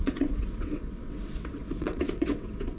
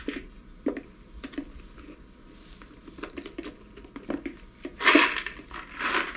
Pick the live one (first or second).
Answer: second